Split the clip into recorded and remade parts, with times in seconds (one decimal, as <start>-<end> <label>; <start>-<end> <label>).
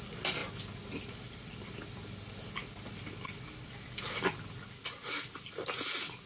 0.0-6.3 recorded